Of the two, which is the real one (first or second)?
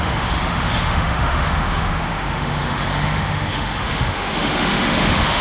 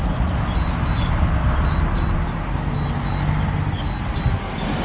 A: second